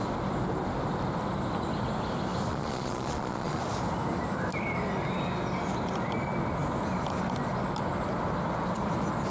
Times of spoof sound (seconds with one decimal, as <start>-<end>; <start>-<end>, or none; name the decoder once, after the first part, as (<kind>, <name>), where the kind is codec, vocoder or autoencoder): 2.5-3.6 (vocoder, Vocos)